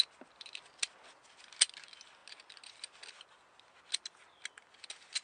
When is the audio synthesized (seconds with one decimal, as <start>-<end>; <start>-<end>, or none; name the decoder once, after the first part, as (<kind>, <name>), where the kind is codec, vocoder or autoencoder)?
none